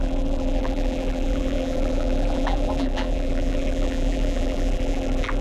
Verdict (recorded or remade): remade